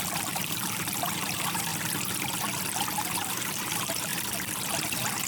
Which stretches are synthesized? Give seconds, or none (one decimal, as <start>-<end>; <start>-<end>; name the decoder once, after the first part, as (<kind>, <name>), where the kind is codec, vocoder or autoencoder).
0.0-1.7 (vocoder, BigVGAN v2); 3.3-4.1